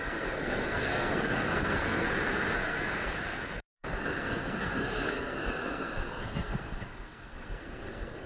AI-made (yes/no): yes